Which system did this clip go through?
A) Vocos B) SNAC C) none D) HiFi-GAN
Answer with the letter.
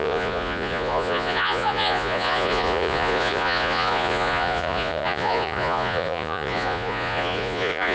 A